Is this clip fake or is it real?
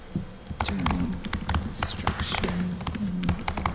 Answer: real